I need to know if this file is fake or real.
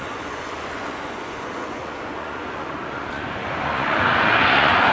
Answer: fake